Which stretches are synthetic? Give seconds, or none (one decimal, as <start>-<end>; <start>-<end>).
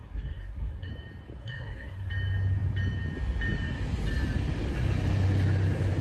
0.0-0.9; 1.4-2.1